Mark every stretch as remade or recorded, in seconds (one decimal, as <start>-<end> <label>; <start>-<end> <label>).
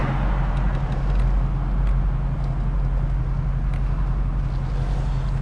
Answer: 0.0-5.4 recorded